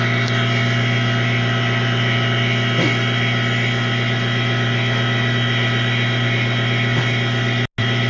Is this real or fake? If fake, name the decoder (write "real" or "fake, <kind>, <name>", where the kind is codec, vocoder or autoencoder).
real